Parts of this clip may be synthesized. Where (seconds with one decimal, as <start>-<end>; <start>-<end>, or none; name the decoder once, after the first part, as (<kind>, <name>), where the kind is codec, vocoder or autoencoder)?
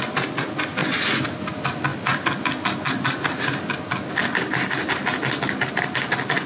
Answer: none